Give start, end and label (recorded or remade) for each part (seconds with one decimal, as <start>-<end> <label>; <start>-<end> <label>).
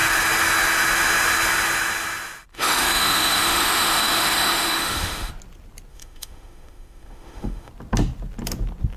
0.0-2.5 recorded; 2.5-5.3 remade; 5.3-5.9 recorded; 5.9-7.7 remade; 7.7-9.0 recorded